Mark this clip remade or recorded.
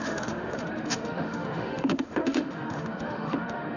remade